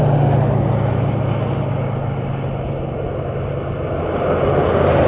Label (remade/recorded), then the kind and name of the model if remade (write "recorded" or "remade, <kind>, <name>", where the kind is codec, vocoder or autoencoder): recorded